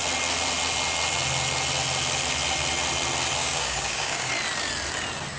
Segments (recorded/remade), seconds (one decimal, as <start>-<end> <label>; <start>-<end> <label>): 0.0-3.4 recorded; 3.4-4.3 remade; 4.3-5.4 recorded